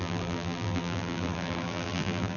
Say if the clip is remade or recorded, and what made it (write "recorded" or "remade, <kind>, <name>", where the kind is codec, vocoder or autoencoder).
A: remade, vocoder, BigVGAN v2